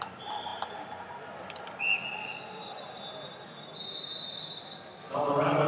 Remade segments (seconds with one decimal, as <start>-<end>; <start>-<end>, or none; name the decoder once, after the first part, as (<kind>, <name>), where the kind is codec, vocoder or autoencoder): none